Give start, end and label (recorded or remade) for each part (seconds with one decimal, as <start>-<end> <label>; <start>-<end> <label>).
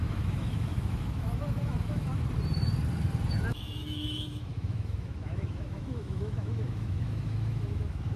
0.0-2.1 remade; 2.1-3.5 recorded; 3.5-8.2 remade